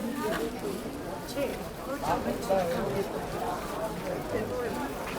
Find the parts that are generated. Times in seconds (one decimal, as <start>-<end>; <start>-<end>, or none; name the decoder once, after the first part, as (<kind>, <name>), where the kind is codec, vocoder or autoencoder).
1.5-3.4 (vocoder, BigVGAN v2)